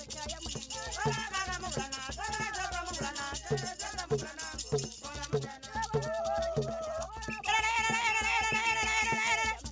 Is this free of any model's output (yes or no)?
yes